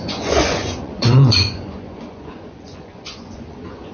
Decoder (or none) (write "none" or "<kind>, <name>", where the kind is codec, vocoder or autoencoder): vocoder, Vocos